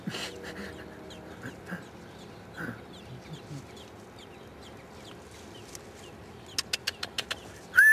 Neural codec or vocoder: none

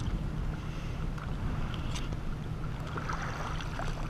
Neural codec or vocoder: none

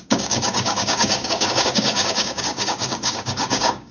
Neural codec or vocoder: codec, DAC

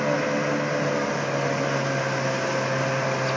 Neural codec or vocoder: none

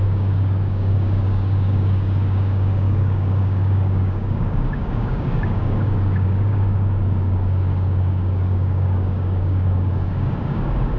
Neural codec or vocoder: codec, DAC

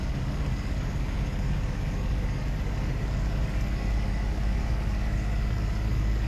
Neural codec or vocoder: codec, DAC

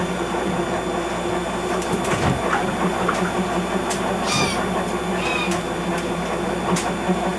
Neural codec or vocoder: none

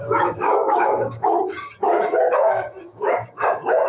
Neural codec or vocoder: codec, DAC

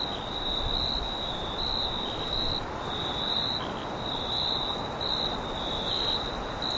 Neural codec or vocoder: none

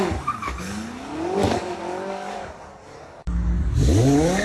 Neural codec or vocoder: codec, DAC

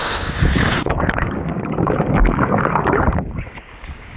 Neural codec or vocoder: codec, DAC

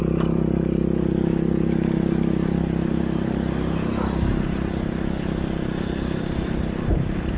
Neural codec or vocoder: none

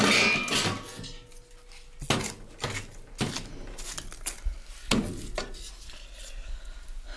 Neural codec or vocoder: none